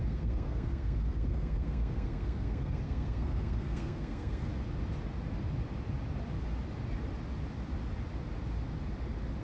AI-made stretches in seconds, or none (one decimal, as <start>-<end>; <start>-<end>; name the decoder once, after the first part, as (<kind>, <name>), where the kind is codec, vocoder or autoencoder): 0.0-4.5 (codec, SNAC)